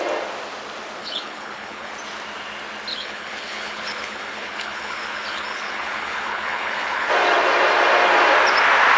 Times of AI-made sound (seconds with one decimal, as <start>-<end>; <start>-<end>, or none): 1.0-1.9; 2.9-7.1